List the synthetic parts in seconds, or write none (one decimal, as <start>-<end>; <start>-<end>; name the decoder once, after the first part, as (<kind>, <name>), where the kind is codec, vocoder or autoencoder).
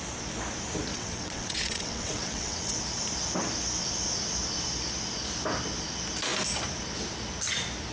0.9-2.8 (vocoder, WaveNeXt)